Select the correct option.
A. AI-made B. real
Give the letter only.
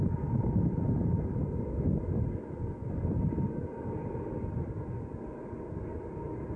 B